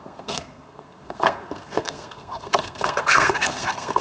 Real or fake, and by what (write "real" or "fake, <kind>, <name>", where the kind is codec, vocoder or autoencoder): fake, codec, SNAC